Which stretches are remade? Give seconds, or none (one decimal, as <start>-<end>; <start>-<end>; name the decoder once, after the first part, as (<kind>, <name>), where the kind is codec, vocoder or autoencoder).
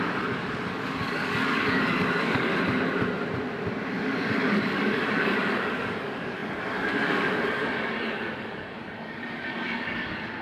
0.0-2.5 (codec, DAC); 4.0-10.4